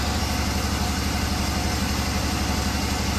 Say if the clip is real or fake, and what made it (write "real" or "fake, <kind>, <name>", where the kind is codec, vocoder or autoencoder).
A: real